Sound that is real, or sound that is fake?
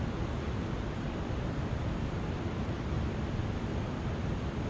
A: real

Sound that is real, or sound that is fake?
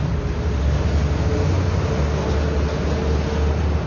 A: real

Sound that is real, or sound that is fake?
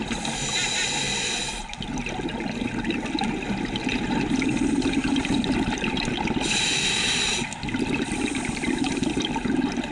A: real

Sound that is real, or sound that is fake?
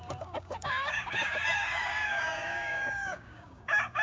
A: fake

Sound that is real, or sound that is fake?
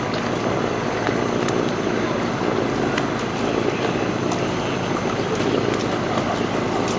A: real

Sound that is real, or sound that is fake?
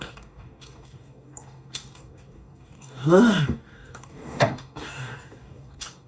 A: fake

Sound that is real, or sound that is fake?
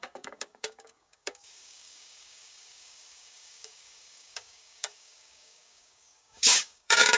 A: fake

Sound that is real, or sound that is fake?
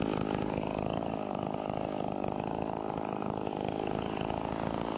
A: fake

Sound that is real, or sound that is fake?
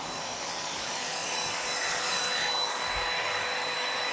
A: fake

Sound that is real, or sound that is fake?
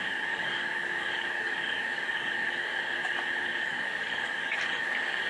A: fake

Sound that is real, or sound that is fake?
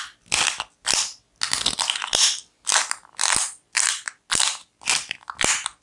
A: real